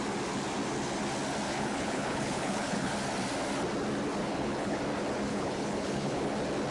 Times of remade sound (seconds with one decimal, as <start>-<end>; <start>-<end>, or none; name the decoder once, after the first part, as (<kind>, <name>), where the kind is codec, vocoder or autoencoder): 1.5-2.9 (codec, HILCodec); 4.2-4.8; 5.3-6.3